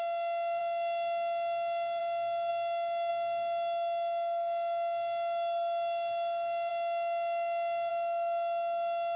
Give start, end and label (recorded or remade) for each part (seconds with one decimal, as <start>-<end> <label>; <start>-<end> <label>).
0.0-9.2 recorded